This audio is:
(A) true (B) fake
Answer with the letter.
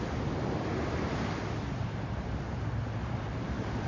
A